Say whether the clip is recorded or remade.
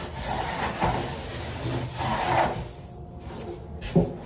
recorded